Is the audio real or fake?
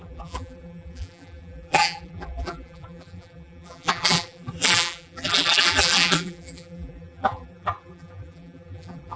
fake